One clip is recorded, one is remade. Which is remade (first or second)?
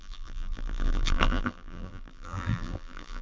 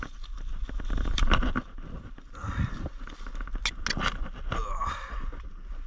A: first